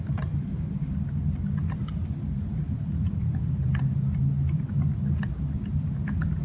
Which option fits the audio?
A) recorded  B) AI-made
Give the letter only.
A